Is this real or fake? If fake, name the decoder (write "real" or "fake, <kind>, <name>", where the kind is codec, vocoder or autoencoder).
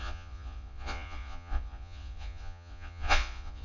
fake, vocoder, Vocos